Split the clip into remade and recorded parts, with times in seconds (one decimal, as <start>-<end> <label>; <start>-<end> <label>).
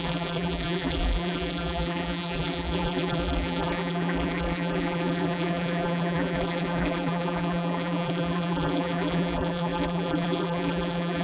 0.0-11.2 remade